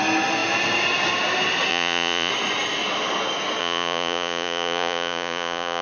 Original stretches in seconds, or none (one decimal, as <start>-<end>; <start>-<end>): 0.0-1.7; 2.3-3.6